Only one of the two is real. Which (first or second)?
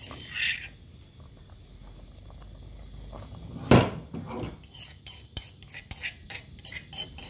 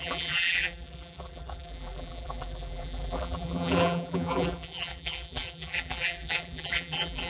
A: first